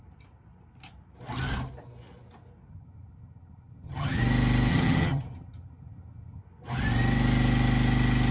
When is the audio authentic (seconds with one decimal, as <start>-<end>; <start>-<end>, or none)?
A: 0.0-2.7; 4.2-4.7; 6.4-8.3